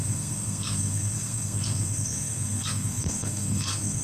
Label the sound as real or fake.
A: fake